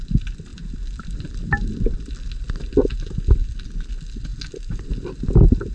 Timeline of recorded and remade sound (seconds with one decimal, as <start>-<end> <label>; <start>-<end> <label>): 0.0-5.7 recorded